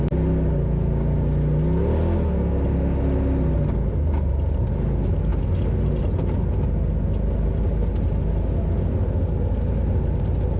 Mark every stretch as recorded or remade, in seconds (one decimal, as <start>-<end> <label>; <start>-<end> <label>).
0.0-10.6 recorded